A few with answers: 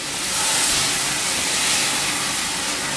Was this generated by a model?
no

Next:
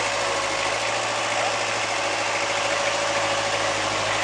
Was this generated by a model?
no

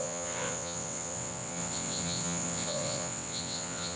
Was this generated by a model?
yes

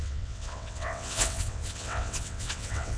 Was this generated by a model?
yes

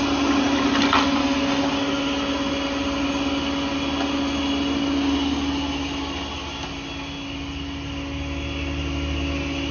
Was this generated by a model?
no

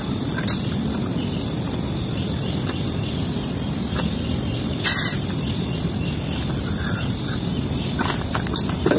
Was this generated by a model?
no